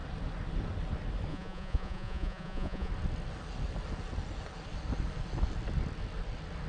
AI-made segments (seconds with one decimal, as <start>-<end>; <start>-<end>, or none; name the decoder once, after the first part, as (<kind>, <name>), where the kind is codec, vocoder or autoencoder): 1.3-2.9 (vocoder, Vocos)